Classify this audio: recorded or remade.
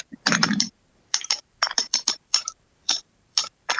remade